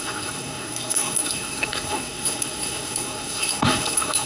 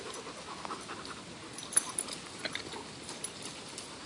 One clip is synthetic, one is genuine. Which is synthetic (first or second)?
first